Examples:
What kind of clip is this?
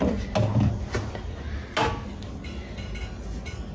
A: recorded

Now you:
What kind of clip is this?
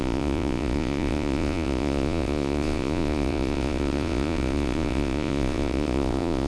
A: remade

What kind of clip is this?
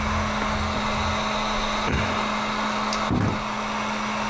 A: recorded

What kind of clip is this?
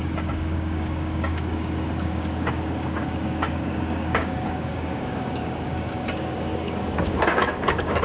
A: remade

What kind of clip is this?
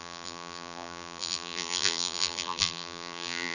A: remade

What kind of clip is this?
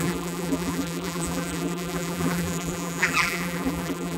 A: remade